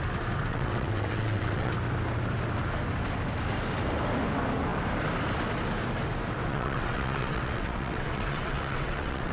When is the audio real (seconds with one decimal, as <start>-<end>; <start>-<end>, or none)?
0.0-0.5; 1.7-6.5